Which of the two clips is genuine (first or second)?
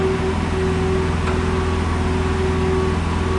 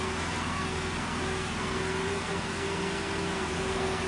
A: first